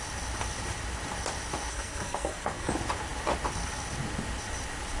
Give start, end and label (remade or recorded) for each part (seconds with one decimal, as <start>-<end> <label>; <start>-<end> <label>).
0.0-1.7 recorded; 1.7-2.7 remade; 2.7-5.0 recorded